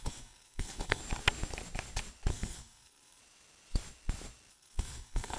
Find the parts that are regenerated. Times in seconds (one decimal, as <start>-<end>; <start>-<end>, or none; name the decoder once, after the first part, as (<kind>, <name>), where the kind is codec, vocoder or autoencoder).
0.0-1.0 (codec, SNAC); 2.3-3.2; 4.5-5.4